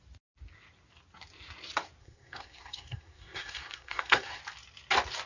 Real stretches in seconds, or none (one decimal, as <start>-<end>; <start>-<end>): 0.0-2.0; 4.4-5.3